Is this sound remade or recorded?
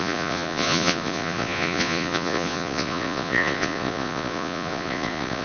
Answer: remade